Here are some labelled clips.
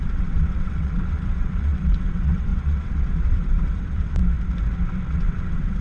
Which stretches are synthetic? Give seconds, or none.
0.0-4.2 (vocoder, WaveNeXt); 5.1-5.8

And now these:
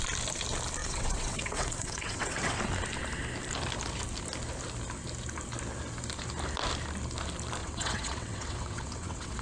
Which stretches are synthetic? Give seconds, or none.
0.8-2.6 (vocoder, WaveNeXt); 7.6-9.4

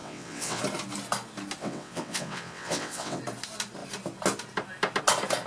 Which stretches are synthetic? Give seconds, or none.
0.0-0.6 (vocoder, WaveNeXt); 1.6-3.2

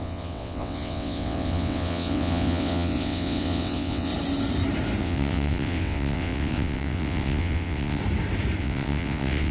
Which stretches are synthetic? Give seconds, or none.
0.0-4.1 (vocoder, WaveNeXt); 5.0-8.0; 8.6-9.5